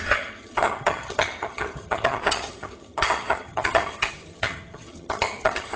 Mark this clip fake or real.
fake